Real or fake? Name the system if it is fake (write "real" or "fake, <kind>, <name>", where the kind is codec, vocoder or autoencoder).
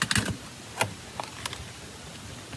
real